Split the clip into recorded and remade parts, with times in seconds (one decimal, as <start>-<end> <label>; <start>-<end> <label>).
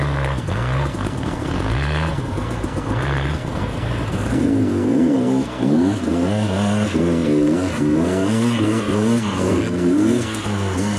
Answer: 0.0-11.0 remade